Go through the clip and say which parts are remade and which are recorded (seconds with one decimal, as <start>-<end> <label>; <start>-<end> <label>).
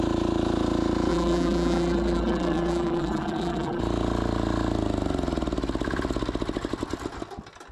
0.0-1.1 recorded; 1.1-3.8 remade; 3.8-7.7 recorded